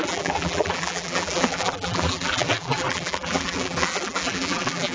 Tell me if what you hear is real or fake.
fake